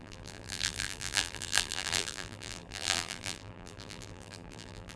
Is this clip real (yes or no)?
no